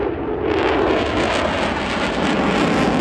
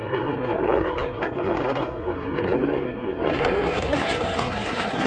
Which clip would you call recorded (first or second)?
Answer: first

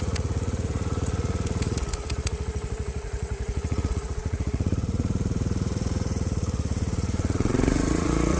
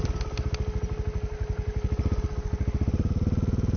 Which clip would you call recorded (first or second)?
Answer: second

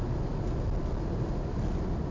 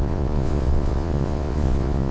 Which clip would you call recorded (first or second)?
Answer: first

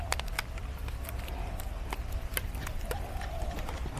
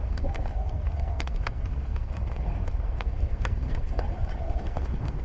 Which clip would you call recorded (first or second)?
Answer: first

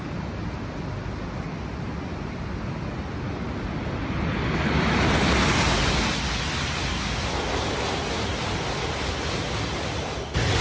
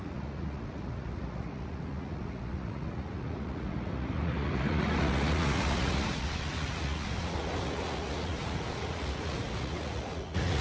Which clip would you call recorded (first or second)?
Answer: first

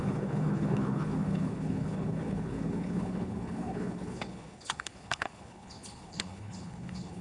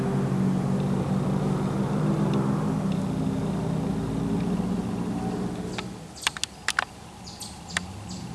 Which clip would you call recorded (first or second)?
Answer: second